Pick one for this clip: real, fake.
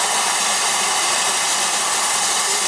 real